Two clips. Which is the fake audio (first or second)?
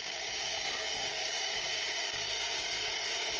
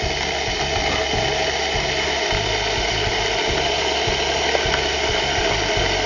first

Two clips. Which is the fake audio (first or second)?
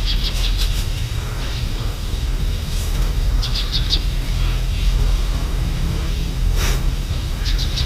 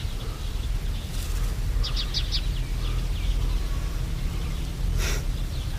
first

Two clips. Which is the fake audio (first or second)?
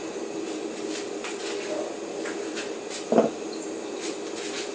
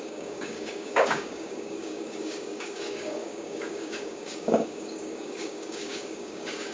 second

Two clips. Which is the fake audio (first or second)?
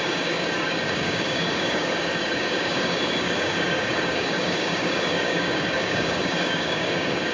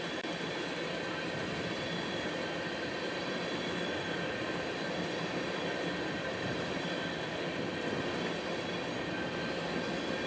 first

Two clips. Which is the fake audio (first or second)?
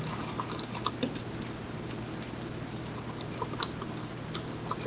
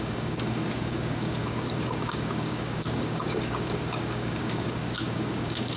second